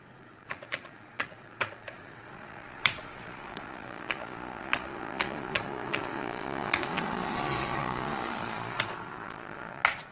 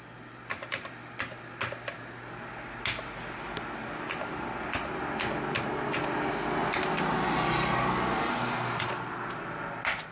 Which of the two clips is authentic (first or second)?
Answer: second